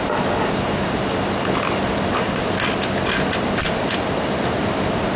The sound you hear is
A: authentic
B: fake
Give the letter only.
A